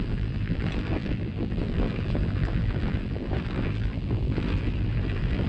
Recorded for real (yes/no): no